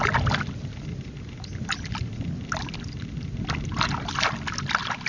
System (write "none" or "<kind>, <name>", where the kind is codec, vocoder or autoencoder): none